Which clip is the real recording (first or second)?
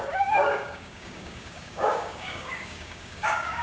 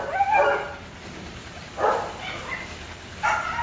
second